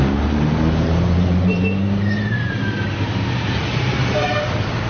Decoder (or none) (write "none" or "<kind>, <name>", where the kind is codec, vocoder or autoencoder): vocoder, BigVGAN v2